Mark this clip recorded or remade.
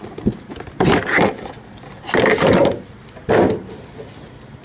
recorded